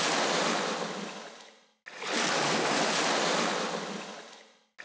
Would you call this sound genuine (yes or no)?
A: yes